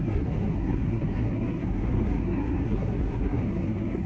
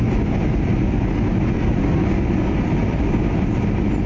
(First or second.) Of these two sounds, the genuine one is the second